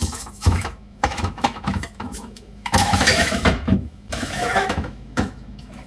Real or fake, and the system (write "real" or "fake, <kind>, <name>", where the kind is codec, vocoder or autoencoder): fake, autoencoder, DAC-VAE